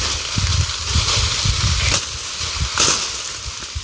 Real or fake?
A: real